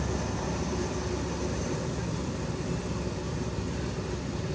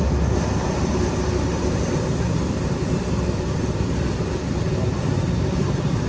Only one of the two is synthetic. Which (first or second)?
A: second